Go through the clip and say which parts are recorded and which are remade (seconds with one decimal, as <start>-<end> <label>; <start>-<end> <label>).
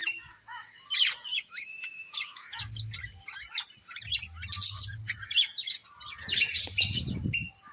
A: 0.0-0.7 remade; 0.7-1.3 recorded; 1.3-2.6 remade; 2.6-7.7 recorded